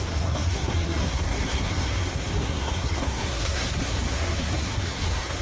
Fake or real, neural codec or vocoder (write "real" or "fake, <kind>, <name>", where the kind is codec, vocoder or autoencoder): fake, codec, SNAC